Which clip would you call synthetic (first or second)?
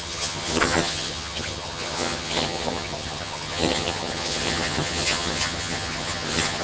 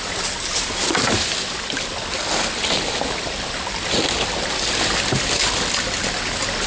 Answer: first